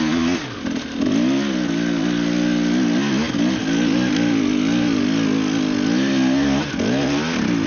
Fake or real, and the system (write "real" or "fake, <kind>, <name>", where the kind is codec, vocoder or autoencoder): real